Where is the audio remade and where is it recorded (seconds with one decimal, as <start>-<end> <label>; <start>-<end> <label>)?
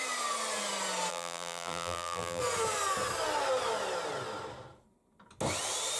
0.0-1.1 recorded; 1.1-2.4 remade; 2.4-6.0 recorded